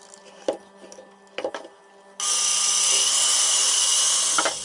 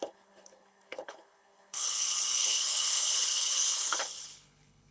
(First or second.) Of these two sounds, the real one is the first